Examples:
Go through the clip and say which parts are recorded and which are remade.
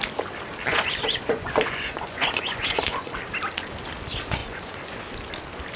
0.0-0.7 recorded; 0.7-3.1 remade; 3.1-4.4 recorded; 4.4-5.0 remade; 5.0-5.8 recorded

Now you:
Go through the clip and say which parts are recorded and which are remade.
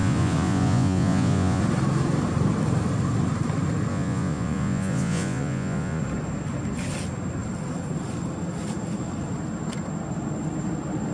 0.0-1.6 remade; 1.6-3.9 recorded; 3.9-6.0 remade; 6.0-11.1 recorded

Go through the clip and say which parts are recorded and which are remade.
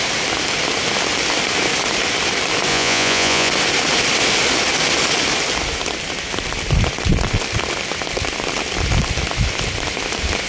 0.0-2.7 recorded; 2.7-3.5 remade; 3.5-10.5 recorded